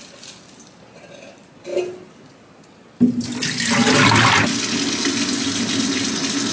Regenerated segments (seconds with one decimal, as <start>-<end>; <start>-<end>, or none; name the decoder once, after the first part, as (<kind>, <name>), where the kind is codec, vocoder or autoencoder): none